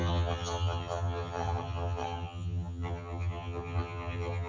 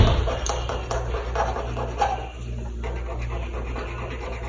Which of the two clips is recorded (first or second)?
second